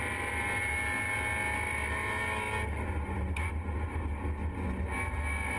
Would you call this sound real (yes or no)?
yes